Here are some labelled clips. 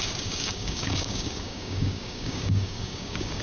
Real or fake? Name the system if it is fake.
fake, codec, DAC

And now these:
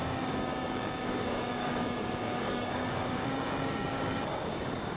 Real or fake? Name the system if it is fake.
fake, codec, DAC